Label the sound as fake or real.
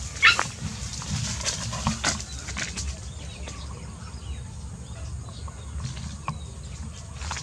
fake